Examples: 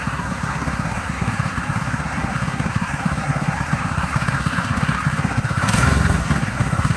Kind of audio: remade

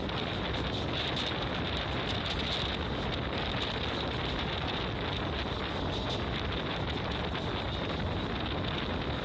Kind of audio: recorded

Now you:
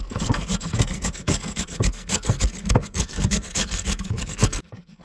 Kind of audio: remade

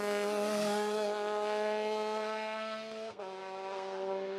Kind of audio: remade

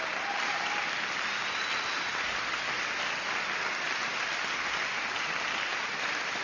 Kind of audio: recorded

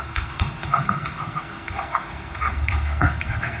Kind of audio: remade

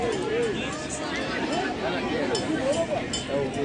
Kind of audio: recorded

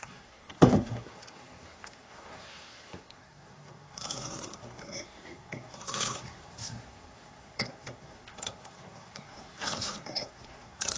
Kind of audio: remade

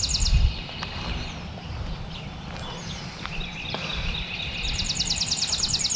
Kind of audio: recorded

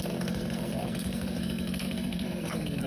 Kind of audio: remade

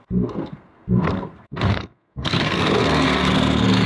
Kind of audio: remade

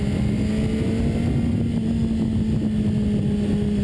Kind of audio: recorded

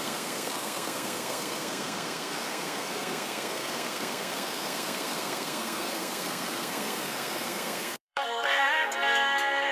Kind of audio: remade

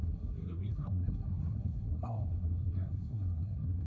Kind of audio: remade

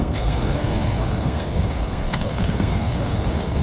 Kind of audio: remade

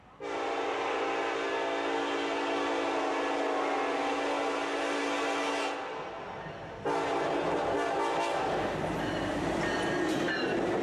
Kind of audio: recorded